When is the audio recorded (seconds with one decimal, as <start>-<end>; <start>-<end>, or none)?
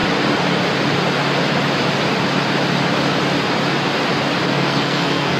0.0-4.5